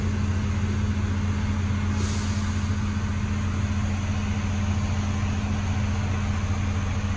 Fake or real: real